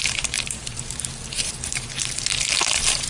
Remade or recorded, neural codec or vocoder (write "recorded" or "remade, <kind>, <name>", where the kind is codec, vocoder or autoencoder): remade, vocoder, BigVGAN v2